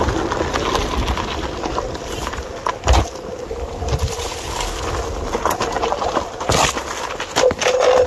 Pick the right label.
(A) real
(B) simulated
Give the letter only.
A